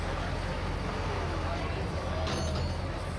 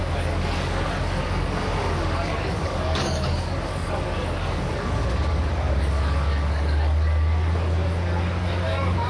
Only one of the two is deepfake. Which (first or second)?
second